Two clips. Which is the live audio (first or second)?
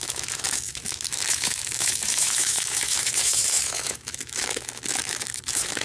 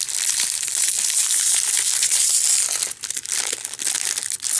second